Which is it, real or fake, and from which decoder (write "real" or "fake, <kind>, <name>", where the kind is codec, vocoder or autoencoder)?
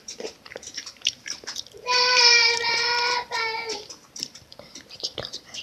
fake, vocoder, BigVGAN v2